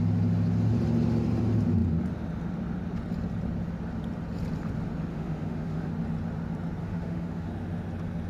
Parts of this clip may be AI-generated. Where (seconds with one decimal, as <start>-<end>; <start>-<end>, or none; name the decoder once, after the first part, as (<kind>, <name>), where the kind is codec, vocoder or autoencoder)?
5.1-5.9 (autoencoder, DAC-VAE); 6.8-7.5